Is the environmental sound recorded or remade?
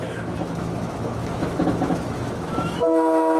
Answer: remade